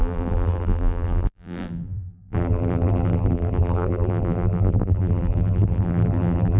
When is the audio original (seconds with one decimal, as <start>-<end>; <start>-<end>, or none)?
none